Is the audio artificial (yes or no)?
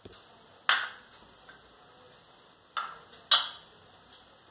no